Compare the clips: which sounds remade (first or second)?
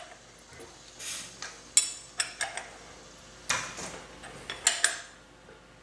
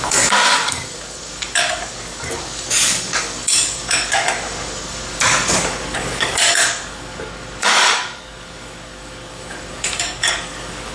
second